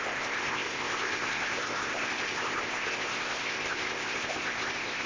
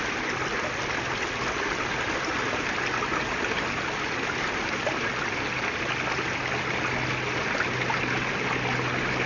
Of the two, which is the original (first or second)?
second